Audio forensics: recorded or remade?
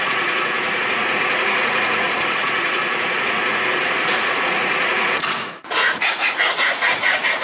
remade